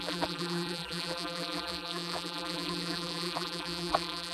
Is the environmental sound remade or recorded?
remade